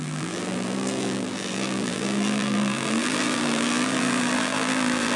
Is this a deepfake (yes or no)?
yes